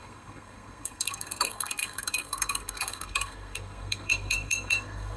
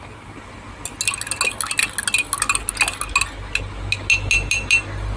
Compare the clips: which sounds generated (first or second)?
first